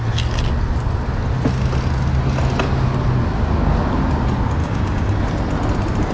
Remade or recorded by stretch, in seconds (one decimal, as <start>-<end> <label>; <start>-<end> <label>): 0.0-4.6 recorded; 4.6-5.2 remade; 5.2-6.1 recorded